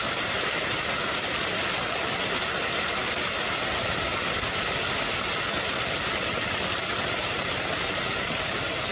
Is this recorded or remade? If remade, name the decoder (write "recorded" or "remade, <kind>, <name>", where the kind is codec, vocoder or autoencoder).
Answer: recorded